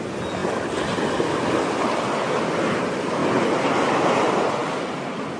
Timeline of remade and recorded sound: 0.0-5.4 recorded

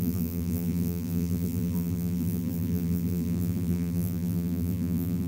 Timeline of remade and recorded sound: 0.0-5.3 remade

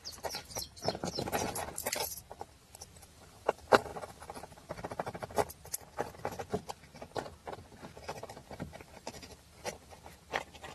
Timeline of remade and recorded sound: 0.0-8.4 recorded; 8.4-9.5 remade; 9.5-10.7 recorded

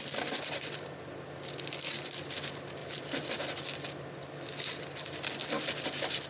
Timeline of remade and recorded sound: 0.0-6.3 recorded

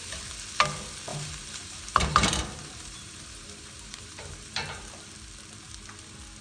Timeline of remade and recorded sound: 0.0-1.1 recorded; 1.1-4.9 remade; 4.9-6.4 recorded

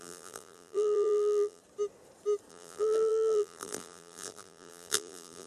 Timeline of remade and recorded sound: 0.0-1.6 remade; 1.6-2.5 recorded; 2.5-5.5 remade